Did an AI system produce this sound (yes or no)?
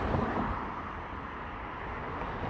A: no